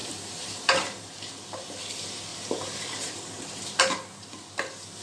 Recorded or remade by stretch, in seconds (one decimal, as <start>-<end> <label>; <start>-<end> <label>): 0.0-1.8 remade; 1.8-2.3 recorded; 2.3-4.5 remade; 4.5-5.0 recorded